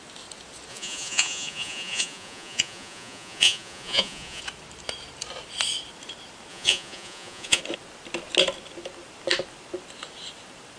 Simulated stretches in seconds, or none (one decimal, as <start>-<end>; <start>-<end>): 0.7-4.4; 6.5-7.6